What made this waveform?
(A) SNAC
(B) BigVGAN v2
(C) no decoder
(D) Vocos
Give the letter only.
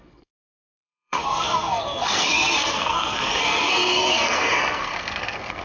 A